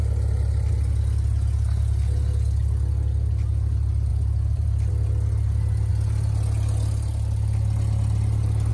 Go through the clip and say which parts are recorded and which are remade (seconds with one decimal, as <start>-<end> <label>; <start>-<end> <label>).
0.0-4.1 recorded; 4.1-4.9 remade; 4.9-8.7 recorded